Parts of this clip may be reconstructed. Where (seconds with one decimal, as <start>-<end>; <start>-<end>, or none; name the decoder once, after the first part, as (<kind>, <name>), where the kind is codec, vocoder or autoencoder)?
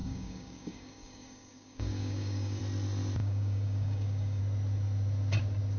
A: 0.0-2.6 (codec, DAC); 3.2-4.4